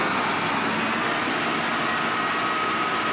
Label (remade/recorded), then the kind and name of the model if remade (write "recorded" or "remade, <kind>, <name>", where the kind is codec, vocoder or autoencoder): recorded